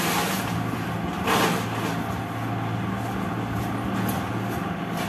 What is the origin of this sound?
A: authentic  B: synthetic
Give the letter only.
A